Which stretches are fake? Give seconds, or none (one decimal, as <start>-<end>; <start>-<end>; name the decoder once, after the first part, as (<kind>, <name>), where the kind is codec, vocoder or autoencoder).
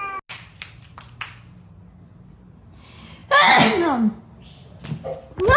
none